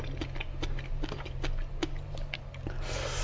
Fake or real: real